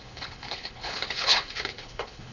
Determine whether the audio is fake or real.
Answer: fake